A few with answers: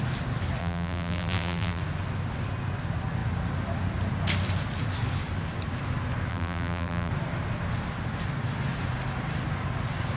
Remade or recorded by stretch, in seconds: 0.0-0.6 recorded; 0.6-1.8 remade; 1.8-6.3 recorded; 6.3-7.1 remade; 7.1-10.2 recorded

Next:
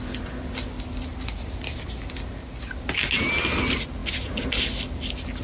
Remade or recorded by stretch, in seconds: 0.0-5.4 recorded

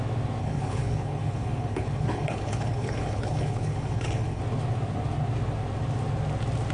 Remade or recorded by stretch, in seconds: 0.0-0.4 recorded; 0.4-4.4 remade; 4.4-6.7 recorded

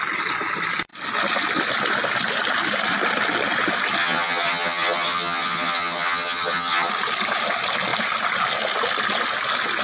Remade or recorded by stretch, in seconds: 0.0-4.0 recorded; 4.0-6.9 remade; 6.9-9.8 recorded

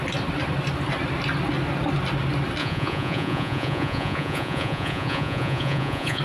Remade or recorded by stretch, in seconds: 0.0-2.6 recorded; 2.6-6.2 remade

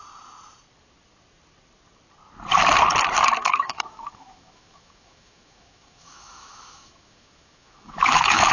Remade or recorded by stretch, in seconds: 0.0-3.4 recorded; 3.4-8.5 remade